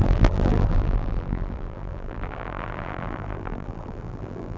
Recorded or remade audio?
remade